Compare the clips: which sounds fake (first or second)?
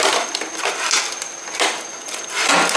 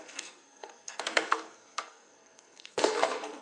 second